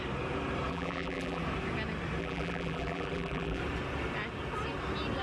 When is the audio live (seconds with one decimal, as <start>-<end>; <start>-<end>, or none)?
0.0-0.7; 1.4-2.2; 3.6-5.2